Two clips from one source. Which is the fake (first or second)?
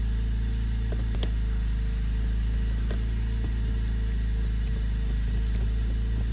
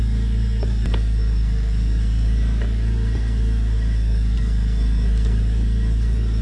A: second